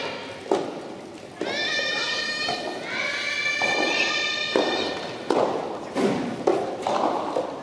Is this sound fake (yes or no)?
no